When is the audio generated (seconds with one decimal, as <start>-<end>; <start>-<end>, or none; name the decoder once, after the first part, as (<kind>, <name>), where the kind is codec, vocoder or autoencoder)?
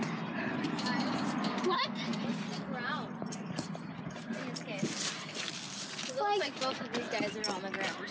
none